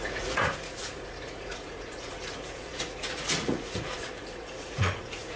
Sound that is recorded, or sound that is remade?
remade